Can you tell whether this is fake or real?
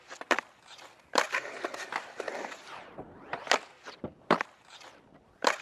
fake